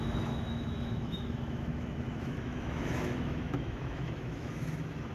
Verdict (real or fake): fake